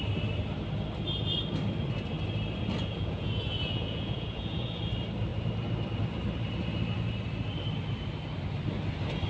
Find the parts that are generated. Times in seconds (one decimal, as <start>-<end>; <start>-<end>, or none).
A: 2.8-4.8